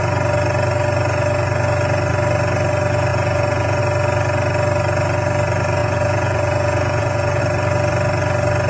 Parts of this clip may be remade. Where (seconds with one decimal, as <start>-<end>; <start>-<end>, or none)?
3.1-3.8; 5.8-7.4